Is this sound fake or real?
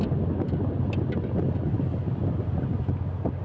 real